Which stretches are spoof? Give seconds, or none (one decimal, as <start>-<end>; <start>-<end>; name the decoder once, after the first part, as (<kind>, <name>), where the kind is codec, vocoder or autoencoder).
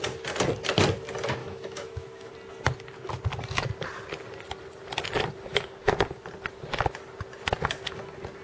1.4-2.3 (autoencoder, DAC-VAE)